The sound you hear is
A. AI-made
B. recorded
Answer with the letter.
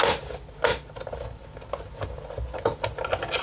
B